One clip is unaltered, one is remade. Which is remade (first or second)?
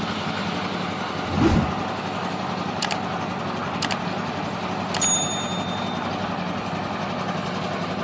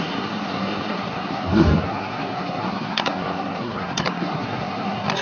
second